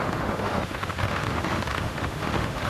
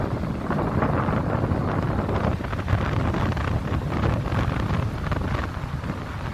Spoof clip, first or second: first